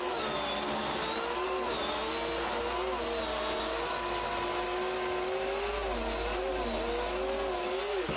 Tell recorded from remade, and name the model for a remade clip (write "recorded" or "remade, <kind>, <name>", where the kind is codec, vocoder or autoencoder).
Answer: recorded